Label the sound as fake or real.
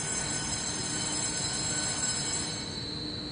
real